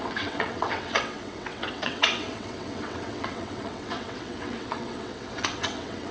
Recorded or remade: remade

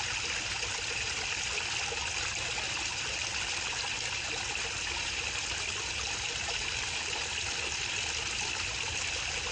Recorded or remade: recorded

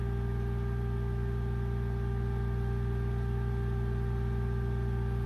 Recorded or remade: recorded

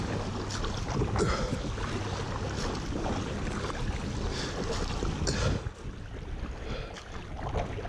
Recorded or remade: recorded